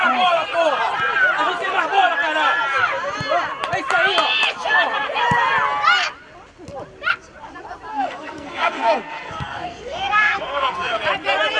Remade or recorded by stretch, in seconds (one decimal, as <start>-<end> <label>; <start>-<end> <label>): 0.0-7.9 recorded; 7.9-11.0 remade; 11.0-11.6 recorded